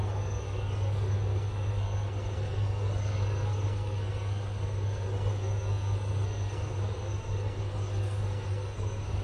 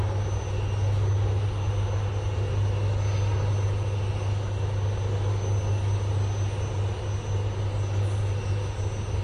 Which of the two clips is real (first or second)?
second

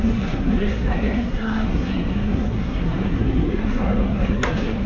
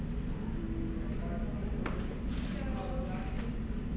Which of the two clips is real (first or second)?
second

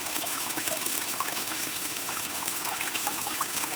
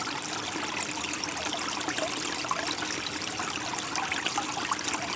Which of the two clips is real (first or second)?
second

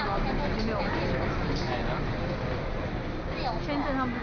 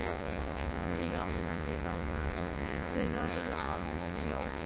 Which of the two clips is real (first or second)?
first